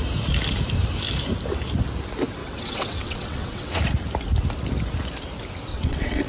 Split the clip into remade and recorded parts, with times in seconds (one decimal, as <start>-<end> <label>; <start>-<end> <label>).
0.0-2.4 recorded; 2.4-3.8 remade; 3.8-5.7 recorded; 5.7-6.3 remade